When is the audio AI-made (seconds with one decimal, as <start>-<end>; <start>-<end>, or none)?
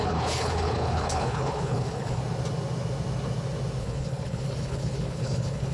0.0-2.2; 3.8-5.7